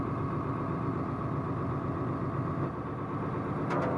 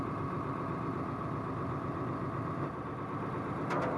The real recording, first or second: first